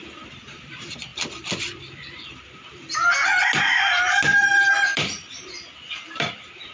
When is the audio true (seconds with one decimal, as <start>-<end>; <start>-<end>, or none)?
none